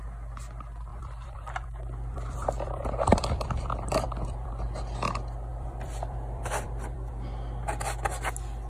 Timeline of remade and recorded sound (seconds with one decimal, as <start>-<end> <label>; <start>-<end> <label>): 0.0-0.9 recorded; 0.9-4.5 remade; 4.5-5.5 recorded; 5.5-7.1 remade; 7.1-8.7 recorded